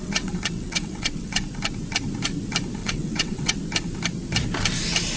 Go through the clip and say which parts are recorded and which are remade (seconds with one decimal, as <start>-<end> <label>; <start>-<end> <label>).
0.0-1.4 remade; 1.4-2.8 recorded; 2.8-3.6 remade; 3.6-5.2 recorded